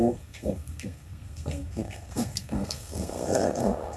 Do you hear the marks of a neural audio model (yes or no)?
yes